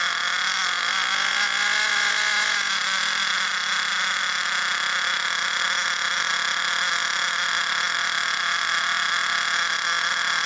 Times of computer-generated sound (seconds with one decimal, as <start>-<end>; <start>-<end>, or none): none